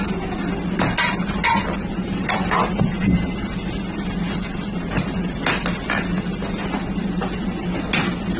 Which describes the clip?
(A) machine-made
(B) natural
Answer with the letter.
B